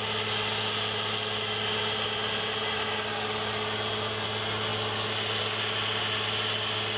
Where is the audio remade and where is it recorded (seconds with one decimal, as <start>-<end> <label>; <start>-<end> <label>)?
0.0-7.0 recorded